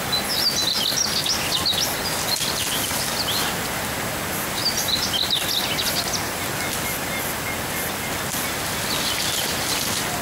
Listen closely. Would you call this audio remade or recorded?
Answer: recorded